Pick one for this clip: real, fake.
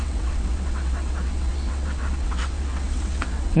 fake